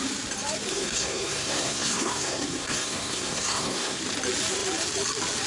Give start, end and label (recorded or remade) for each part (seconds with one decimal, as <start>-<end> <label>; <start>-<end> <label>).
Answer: 0.0-0.7 recorded; 0.7-4.0 remade; 4.0-5.5 recorded